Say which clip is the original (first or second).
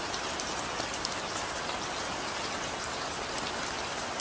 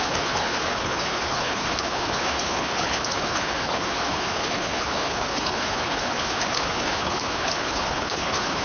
first